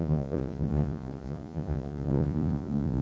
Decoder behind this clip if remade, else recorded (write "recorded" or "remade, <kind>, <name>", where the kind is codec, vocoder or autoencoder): remade, vocoder, Vocos